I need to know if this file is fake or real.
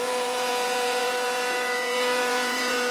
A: fake